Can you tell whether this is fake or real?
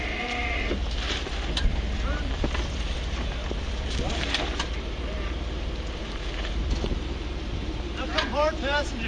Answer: fake